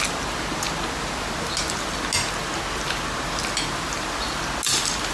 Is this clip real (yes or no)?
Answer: yes